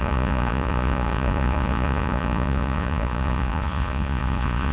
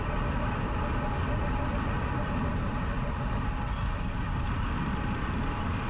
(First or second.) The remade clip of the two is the first